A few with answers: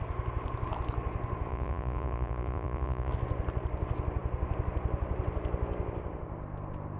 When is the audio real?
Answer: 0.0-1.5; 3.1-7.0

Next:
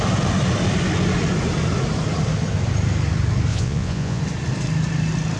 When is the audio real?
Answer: 0.0-3.5; 4.2-5.4

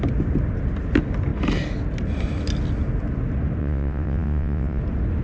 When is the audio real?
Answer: 0.0-3.6; 4.8-5.2

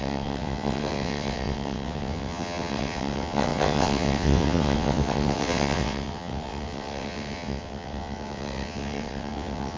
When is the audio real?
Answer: none

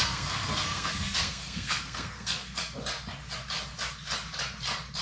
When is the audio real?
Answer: 2.6-5.0

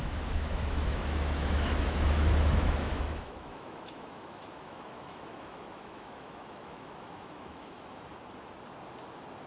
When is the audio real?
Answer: 8.1-9.5